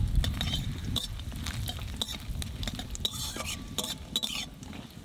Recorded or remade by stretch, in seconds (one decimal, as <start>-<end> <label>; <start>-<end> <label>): 0.0-5.0 recorded